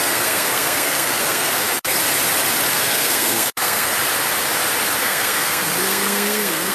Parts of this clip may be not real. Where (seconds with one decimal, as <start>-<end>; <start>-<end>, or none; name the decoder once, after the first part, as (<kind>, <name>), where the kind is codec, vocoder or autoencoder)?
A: 0.0-2.0 (codec, SNAC); 2.7-3.9; 5.0-6.7

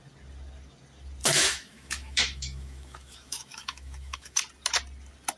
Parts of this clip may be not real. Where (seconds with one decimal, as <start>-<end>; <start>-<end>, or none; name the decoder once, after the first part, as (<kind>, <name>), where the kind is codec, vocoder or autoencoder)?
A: 1.2-4.4 (autoencoder, DAC-VAE)

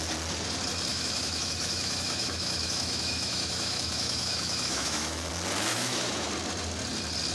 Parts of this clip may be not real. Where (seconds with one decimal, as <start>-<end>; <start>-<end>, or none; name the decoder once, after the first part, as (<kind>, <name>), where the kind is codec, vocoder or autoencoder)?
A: 0.9-5.3 (autoencoder, DAC-VAE); 5.7-6.3

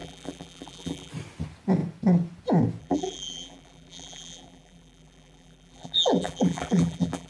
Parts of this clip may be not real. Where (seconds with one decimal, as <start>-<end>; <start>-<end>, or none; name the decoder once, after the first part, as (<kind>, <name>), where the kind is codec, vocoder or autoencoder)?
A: 0.0-1.1 (vocoder, BigVGAN v2); 2.8-7.3